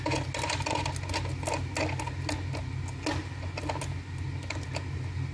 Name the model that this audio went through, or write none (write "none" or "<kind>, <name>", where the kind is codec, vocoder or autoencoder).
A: none